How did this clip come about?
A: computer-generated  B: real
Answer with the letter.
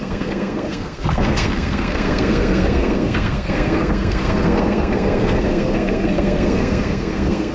A